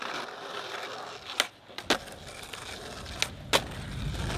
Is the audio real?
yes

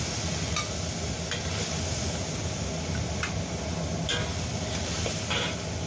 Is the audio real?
yes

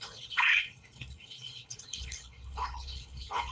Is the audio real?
no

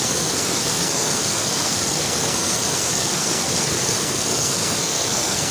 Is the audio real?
no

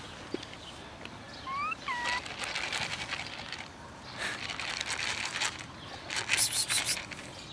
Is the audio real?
yes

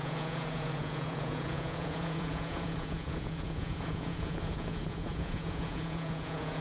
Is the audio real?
no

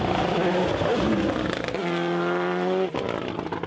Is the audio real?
yes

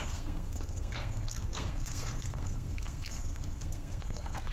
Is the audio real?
no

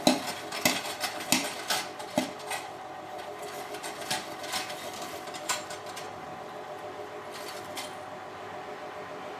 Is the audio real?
yes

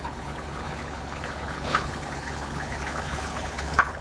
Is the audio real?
no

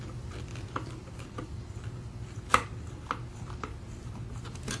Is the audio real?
no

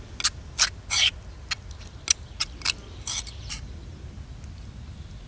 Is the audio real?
yes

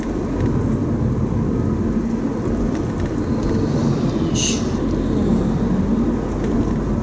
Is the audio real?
yes